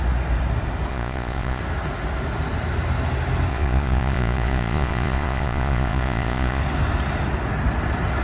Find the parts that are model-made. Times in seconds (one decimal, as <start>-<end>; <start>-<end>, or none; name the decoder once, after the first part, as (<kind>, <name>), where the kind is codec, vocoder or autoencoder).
0.9-1.6 (vocoder, Vocos); 3.5-6.6

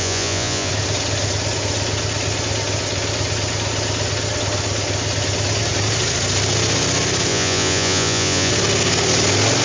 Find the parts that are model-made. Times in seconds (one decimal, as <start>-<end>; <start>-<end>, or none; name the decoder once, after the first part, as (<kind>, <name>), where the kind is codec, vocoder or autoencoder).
0.0-0.7 (vocoder, Vocos); 7.3-8.5

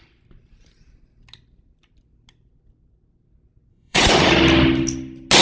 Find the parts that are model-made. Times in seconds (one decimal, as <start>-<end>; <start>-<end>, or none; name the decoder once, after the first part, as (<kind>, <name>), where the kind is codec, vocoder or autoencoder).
3.7-4.3 (vocoder, Vocos)

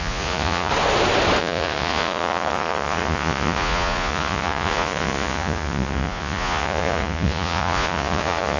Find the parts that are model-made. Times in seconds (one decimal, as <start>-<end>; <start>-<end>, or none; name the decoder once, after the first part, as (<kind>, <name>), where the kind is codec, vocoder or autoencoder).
0.0-0.7 (vocoder, Vocos); 1.4-8.6

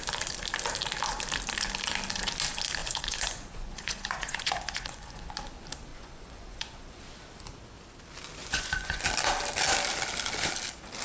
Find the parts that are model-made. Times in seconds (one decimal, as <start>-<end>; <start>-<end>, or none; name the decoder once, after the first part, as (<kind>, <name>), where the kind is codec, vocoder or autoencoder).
2.8-5.3 (vocoder, Vocos); 5.9-7.0; 8.4-9.0

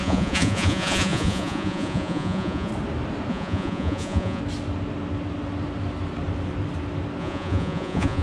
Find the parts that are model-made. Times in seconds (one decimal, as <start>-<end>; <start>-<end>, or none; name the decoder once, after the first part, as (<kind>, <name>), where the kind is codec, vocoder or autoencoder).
0.0-2.7 (vocoder, Vocos); 3.3-4.4; 7.2-8.2

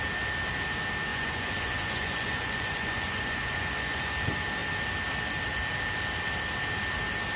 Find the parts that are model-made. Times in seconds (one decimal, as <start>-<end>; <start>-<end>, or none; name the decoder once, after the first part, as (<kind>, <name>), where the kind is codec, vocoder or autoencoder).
1.1-4.1 (vocoder, Vocos)

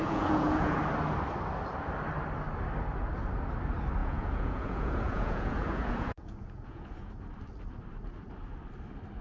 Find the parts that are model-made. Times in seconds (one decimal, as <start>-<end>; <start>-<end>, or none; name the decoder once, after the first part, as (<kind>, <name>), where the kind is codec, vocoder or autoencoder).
0.0-0.8 (vocoder, Vocos); 4.0-7.1